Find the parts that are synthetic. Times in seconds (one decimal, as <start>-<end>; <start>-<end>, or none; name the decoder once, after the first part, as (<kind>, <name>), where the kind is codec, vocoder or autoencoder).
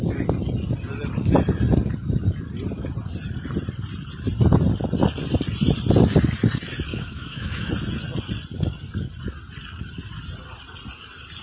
6.9-7.7 (autoencoder, DAC-VAE)